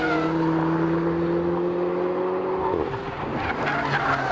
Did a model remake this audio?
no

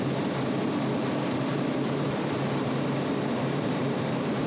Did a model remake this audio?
yes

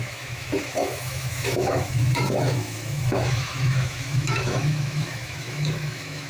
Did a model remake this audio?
yes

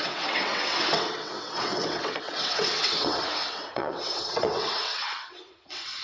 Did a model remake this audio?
yes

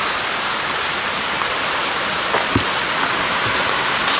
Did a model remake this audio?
no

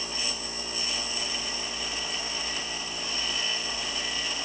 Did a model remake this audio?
no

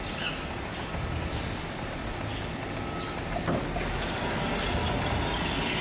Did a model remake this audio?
no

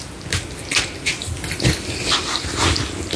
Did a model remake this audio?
no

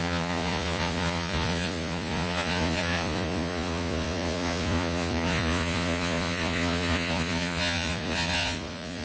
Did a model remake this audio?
yes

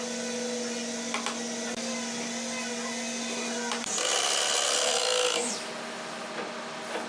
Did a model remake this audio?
no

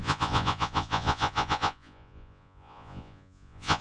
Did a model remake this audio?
yes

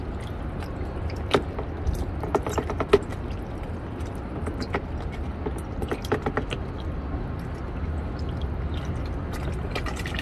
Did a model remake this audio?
no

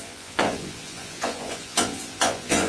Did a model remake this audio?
yes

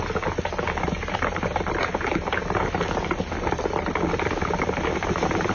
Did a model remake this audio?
no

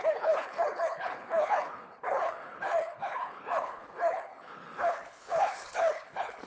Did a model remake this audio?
yes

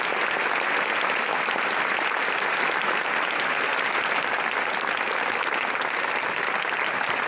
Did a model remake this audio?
no